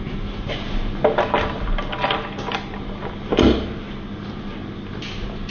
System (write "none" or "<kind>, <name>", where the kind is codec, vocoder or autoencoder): none